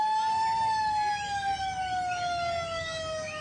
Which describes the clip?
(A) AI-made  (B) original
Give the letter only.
B